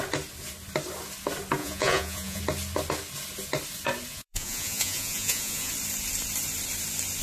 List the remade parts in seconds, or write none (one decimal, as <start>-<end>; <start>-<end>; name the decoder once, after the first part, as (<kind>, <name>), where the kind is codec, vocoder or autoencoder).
1.6-2.4 (vocoder, Vocos); 4.1-5.7